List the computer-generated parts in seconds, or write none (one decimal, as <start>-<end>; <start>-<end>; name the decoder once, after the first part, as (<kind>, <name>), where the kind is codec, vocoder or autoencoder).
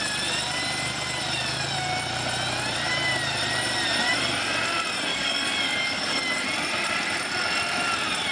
5.1-6.1 (codec, DAC)